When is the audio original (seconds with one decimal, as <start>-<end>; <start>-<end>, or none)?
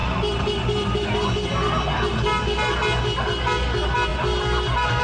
0.0-5.0